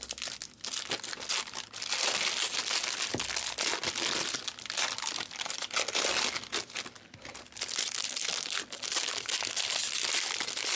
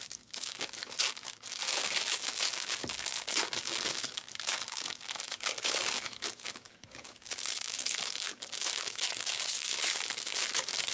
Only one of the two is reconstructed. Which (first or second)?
second